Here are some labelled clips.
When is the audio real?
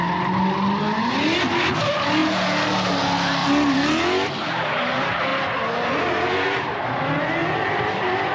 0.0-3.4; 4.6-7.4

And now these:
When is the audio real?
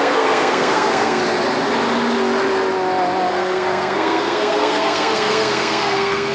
1.2-3.3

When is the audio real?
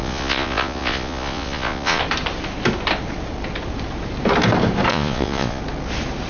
2.0-4.9; 5.6-6.3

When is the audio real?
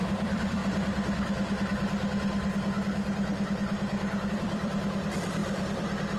0.6-4.3